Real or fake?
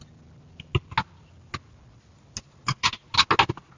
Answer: real